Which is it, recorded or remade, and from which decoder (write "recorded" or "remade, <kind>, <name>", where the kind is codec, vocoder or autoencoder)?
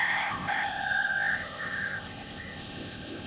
remade, codec, ZipCodec